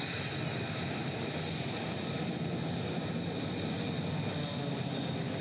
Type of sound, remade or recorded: recorded